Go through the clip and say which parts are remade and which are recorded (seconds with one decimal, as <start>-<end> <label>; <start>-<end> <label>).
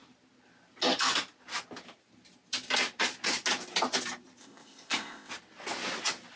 0.0-4.4 recorded; 4.4-5.3 remade; 5.3-6.4 recorded